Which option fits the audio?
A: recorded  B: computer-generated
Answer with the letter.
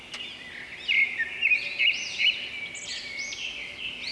A